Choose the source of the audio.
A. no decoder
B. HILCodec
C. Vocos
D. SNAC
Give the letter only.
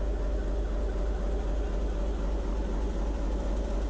A